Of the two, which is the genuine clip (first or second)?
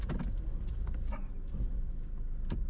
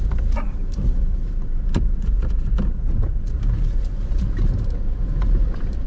first